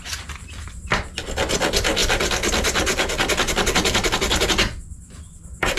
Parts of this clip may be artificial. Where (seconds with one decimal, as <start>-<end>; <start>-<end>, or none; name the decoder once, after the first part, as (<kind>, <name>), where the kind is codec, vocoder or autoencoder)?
none